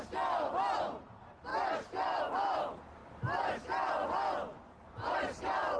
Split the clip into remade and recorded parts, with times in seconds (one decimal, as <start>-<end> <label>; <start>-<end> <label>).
0.0-1.5 recorded; 1.5-2.2 remade; 2.2-4.5 recorded; 4.5-5.2 remade; 5.2-5.8 recorded